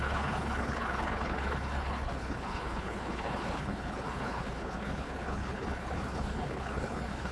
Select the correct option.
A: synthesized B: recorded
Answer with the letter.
A